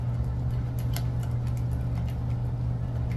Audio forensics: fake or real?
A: real